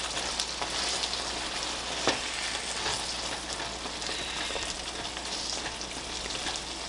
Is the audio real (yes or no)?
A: yes